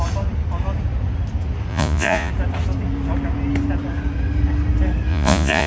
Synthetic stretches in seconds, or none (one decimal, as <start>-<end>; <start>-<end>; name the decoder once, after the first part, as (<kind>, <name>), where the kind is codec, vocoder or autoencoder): 1.7-2.3 (vocoder, Vocos); 5.1-5.7